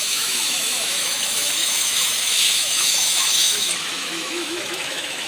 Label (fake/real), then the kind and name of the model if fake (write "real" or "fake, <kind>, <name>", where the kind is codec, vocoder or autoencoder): fake, autoencoder, DAC-VAE